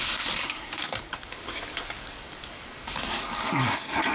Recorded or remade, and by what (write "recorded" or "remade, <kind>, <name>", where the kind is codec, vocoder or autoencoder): remade, codec, DAC